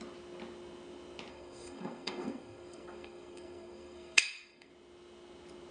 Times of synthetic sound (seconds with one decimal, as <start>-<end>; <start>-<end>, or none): 1.3-4.7